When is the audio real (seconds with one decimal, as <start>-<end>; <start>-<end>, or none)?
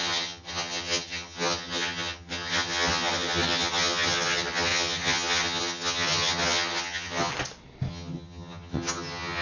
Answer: 7.3-7.9